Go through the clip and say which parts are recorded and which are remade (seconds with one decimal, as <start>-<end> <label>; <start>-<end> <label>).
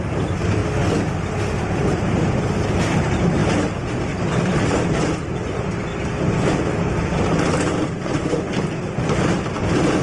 0.0-0.6 remade; 0.6-1.3 recorded; 1.3-3.4 remade; 3.4-4.4 recorded; 4.4-5.9 remade; 5.9-7.0 recorded; 7.0-10.0 remade